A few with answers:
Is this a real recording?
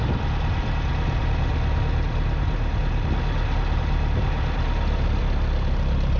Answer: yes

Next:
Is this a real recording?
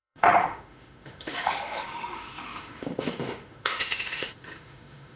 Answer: no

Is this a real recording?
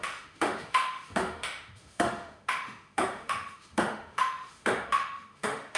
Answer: no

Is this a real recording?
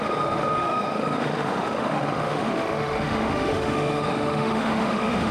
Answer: no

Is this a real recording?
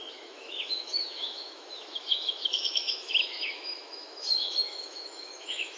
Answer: no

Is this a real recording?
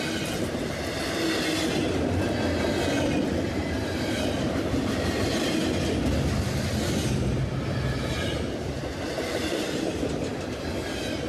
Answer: yes